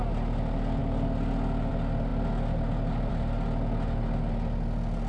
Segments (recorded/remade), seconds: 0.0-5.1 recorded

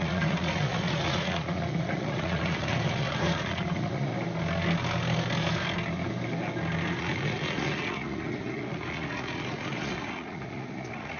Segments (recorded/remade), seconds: 0.0-4.1 remade; 4.1-7.0 recorded; 7.0-11.2 remade